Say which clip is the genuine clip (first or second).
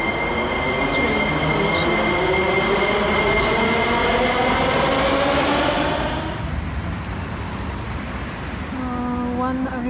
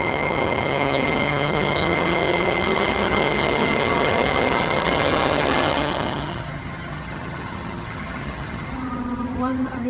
first